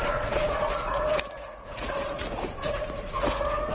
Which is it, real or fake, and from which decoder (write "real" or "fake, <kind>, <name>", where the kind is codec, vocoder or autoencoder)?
fake, vocoder, Vocos